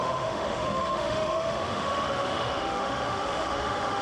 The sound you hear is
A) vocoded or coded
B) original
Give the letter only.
A